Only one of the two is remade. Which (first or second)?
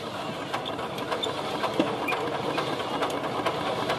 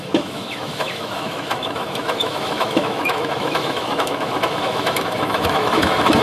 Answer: second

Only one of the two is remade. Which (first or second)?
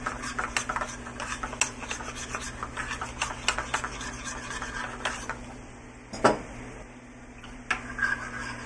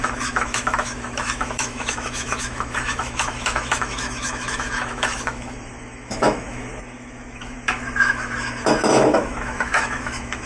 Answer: second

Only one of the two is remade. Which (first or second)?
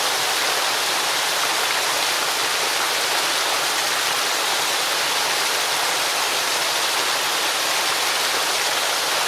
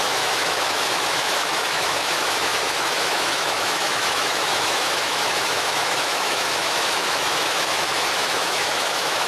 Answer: second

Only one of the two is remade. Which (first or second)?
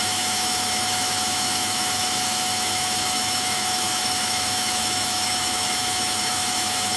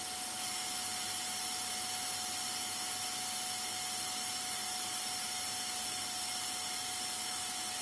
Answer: first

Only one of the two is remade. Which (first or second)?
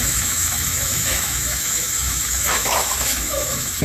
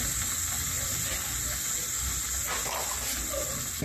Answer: first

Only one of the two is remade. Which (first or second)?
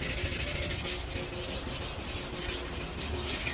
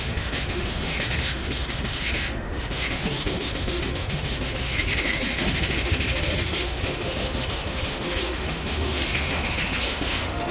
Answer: second